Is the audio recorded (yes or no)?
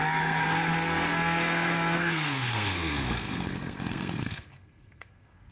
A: no